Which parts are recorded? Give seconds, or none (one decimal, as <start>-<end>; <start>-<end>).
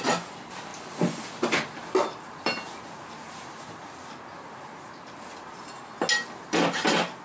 0.0-7.2